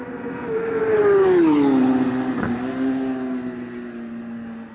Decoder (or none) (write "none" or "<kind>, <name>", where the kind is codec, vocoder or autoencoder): none